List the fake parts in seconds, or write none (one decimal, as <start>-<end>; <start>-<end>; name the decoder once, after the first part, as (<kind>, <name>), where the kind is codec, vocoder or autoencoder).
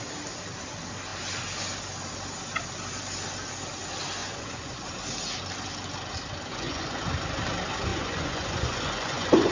4.2-4.9 (vocoder, Vocos); 6.5-7.0; 7.9-9.5